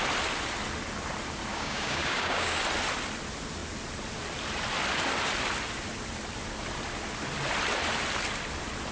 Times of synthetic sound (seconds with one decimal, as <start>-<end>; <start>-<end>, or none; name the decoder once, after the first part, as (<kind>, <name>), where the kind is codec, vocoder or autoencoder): 1.5-2.6 (codec, DAC)